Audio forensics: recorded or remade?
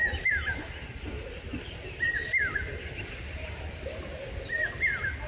recorded